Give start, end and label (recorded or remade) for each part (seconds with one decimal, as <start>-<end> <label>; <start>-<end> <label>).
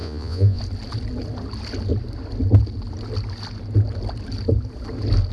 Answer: 0.0-0.6 remade; 0.6-5.3 recorded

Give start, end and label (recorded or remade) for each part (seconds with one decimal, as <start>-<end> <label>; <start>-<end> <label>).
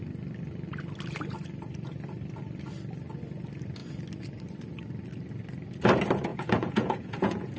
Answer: 0.0-6.3 recorded; 6.3-7.6 remade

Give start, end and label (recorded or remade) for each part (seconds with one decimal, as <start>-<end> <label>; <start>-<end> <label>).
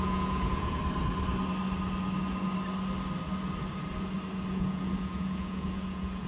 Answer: 0.0-0.8 remade; 0.8-4.5 recorded; 4.5-6.3 remade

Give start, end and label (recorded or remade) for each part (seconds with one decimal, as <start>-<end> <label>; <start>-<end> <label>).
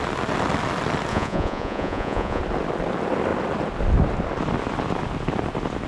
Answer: 0.0-1.1 recorded; 1.1-2.4 remade; 2.4-5.9 recorded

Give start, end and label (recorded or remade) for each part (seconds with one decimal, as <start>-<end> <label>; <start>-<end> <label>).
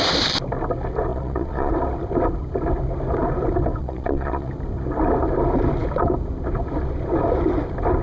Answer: 0.0-1.1 recorded; 1.1-1.7 remade; 1.7-3.8 recorded; 3.8-4.5 remade; 4.5-8.0 recorded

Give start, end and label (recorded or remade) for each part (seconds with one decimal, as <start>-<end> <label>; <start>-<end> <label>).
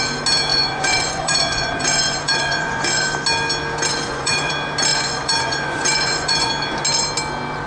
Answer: 0.0-0.5 recorded; 0.5-3.0 remade; 3.0-3.9 recorded; 3.9-4.5 remade; 4.5-4.9 recorded; 4.9-6.5 remade; 6.5-7.7 recorded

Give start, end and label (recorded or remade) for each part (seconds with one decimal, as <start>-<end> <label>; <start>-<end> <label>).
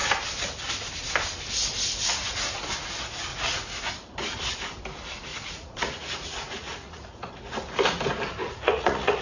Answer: 0.0-3.3 recorded; 3.3-3.9 remade; 3.9-5.3 recorded; 5.3-7.4 remade; 7.4-8.4 recorded; 8.4-9.2 remade